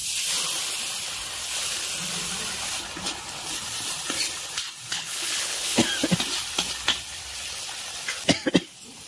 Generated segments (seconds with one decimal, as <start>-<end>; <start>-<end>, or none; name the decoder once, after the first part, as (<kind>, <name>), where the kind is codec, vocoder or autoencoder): 4.9-5.8 (codec, HILCodec)